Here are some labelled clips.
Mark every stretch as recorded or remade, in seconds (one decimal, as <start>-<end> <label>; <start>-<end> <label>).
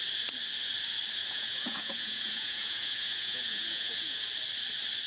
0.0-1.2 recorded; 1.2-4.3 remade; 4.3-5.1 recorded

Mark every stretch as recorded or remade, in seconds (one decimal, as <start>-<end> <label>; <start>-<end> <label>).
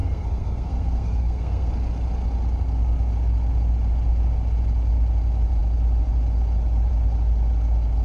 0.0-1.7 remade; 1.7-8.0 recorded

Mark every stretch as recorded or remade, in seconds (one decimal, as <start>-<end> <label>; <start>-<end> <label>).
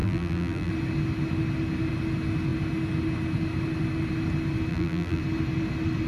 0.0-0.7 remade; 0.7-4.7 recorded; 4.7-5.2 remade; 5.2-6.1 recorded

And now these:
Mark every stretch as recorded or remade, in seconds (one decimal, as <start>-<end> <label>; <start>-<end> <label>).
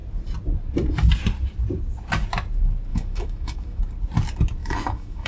0.0-2.9 recorded; 2.9-3.8 remade; 3.8-4.6 recorded; 4.6-5.3 remade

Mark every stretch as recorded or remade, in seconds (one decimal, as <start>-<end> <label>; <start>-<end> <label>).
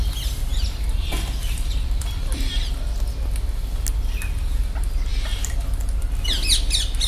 0.0-0.5 recorded; 0.5-2.6 remade; 2.6-5.1 recorded; 5.1-6.1 remade; 6.1-7.1 recorded